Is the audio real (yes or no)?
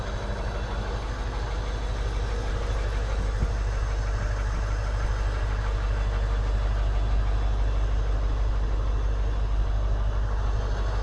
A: yes